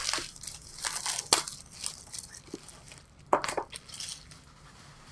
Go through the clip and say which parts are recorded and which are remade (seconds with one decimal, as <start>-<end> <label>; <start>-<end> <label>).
0.0-5.1 recorded